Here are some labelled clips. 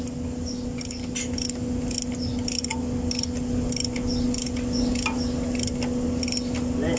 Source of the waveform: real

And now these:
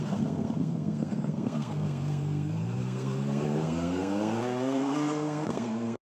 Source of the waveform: fake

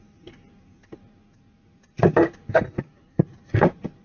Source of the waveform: real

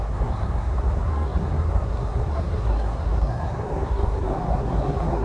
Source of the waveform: fake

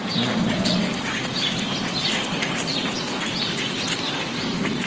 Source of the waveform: real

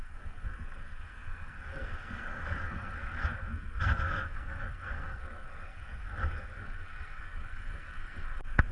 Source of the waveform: fake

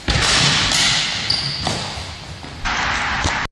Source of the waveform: real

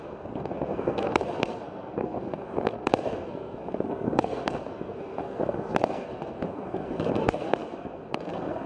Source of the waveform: fake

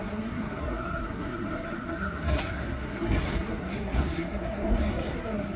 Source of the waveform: fake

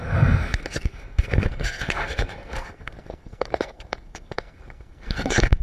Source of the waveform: fake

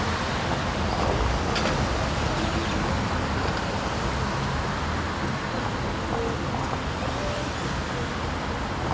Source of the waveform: real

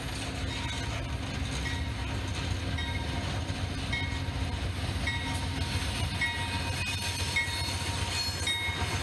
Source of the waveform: real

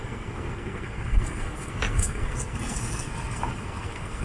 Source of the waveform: fake